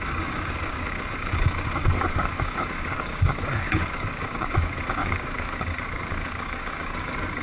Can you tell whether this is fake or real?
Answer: fake